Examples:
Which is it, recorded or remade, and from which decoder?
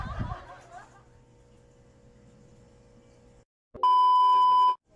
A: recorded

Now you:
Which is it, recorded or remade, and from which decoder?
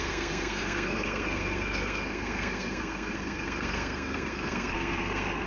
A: remade, codec, SNAC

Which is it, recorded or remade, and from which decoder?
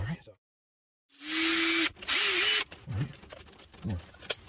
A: recorded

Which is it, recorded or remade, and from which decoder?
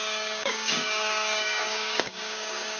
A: remade, codec, DAC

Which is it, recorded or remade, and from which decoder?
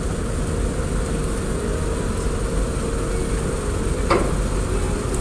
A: recorded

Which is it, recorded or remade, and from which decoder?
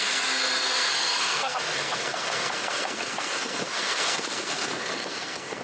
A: remade, codec, SNAC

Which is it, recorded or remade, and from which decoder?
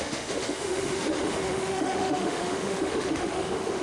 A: remade, autoencoder, DAC-VAE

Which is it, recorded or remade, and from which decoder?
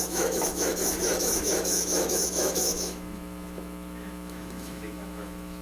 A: remade, autoencoder, DAC-VAE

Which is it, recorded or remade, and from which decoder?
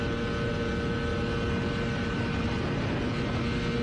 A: recorded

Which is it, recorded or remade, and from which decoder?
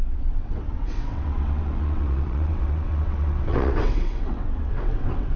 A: remade, vocoder, WaveNeXt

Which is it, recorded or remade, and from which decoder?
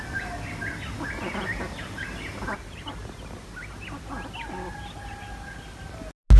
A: recorded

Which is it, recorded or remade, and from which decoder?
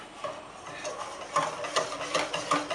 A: recorded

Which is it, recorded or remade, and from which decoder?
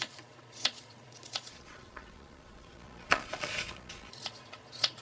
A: remade, vocoder, Vocos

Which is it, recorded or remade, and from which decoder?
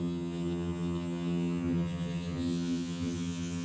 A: remade, vocoder, HiFi-GAN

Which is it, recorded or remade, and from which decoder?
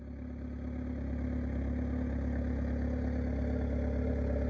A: recorded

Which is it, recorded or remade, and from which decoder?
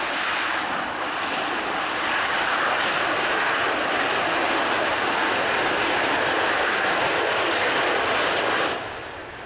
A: recorded